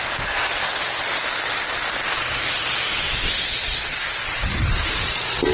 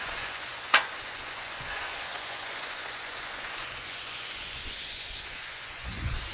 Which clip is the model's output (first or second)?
second